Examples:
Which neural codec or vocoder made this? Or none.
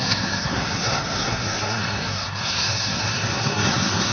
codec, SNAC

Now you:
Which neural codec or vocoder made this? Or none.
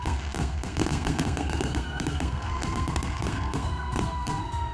codec, SNAC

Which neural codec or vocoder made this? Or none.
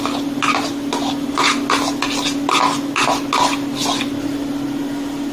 none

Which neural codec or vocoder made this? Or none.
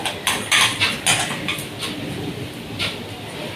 none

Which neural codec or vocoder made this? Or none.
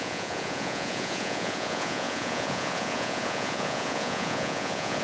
vocoder, Vocos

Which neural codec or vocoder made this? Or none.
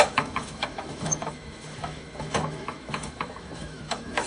autoencoder, DAC-VAE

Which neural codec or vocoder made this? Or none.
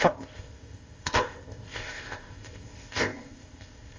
codec, ZipCodec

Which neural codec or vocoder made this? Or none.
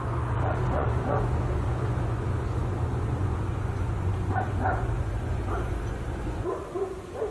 vocoder, Vocos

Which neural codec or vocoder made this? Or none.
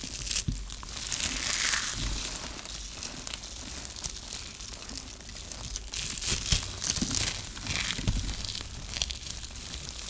none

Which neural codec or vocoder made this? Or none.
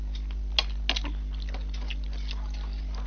none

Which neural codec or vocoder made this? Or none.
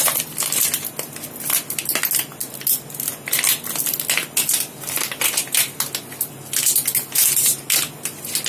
none